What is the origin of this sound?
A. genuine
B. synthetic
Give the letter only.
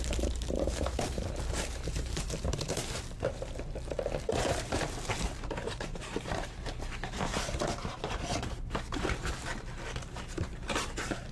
B